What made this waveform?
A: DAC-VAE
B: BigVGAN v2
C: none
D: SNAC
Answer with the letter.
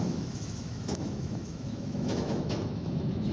A